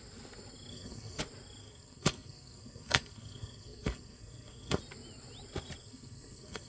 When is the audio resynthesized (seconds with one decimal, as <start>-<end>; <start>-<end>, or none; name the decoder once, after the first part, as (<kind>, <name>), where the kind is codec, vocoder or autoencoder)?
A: 0.7-1.2 (codec, SNAC); 1.6-4.8; 5.8-6.7